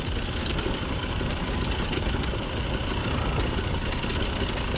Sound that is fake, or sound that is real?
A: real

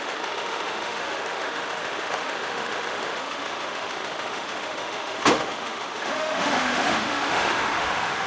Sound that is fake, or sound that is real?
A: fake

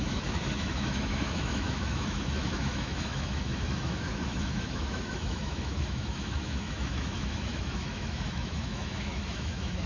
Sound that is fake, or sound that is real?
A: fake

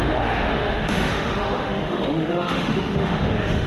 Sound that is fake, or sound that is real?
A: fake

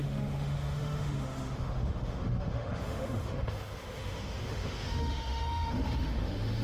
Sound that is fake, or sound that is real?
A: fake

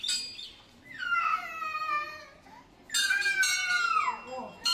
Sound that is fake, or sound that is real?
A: real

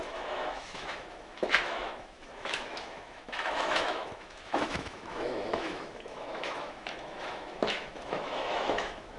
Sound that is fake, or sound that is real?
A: fake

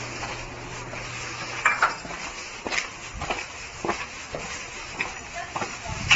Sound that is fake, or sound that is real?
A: real